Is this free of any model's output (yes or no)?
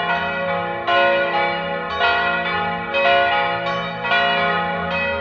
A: yes